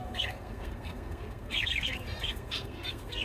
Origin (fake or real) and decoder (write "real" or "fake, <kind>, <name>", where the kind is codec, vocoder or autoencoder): fake, codec, SNAC